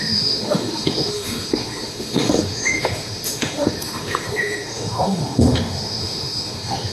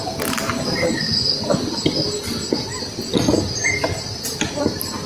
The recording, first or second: second